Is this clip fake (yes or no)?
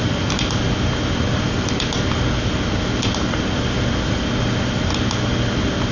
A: no